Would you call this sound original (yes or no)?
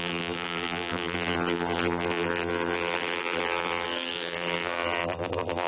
no